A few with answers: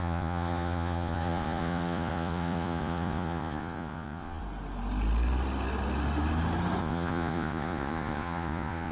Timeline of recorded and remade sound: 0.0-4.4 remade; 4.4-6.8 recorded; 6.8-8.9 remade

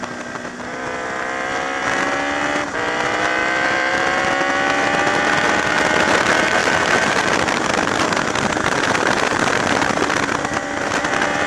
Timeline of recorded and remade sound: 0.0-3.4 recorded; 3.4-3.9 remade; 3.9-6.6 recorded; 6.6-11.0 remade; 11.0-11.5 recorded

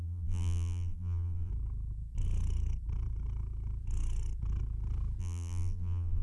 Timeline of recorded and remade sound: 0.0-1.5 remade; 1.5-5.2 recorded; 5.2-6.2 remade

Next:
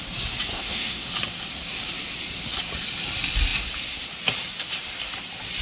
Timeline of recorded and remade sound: 0.0-0.5 recorded; 0.5-1.1 remade; 1.1-5.6 recorded